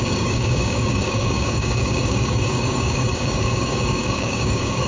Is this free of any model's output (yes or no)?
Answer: no